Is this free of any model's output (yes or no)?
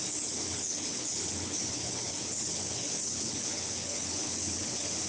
no